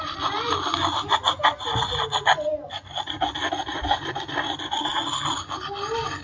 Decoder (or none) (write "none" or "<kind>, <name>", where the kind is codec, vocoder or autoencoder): none